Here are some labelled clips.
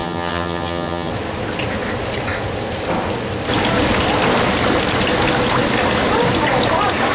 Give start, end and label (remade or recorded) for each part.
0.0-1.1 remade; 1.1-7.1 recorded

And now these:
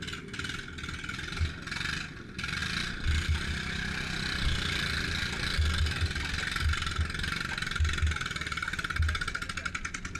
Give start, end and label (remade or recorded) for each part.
0.0-10.2 recorded

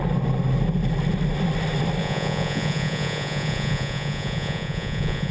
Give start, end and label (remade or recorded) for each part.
0.0-2.0 recorded; 2.0-5.3 remade

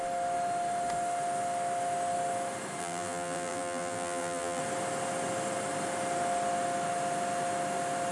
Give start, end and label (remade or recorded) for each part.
0.0-2.8 recorded; 2.8-4.6 remade; 4.6-8.1 recorded

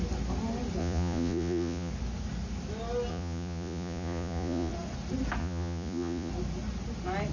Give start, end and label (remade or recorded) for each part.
0.0-0.8 recorded; 0.8-1.9 remade; 1.9-3.1 recorded; 3.1-4.7 remade; 4.7-5.4 recorded; 5.4-6.3 remade; 6.3-7.3 recorded

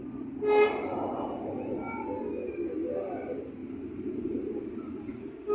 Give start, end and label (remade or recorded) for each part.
0.0-5.5 recorded

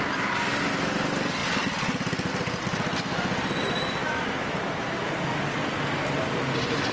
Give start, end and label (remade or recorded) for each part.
0.0-4.0 recorded; 4.0-5.1 remade; 5.1-6.9 recorded

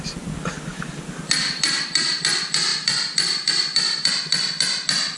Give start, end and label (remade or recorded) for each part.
0.0-2.7 recorded; 2.7-4.1 remade; 4.1-5.2 recorded